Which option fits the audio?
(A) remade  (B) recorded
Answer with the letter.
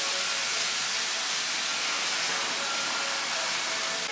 B